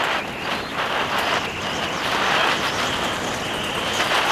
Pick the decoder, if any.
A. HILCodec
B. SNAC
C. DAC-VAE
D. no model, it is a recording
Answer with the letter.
D